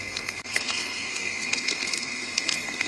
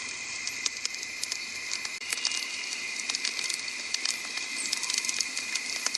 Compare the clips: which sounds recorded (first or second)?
second